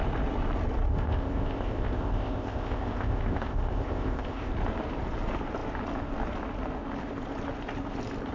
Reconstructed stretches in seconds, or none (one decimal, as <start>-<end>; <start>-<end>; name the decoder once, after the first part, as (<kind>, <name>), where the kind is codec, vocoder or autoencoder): 0.9-4.5 (codec, ZipCodec)